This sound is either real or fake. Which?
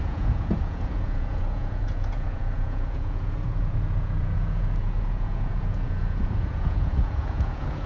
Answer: fake